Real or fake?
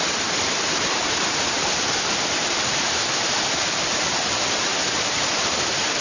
real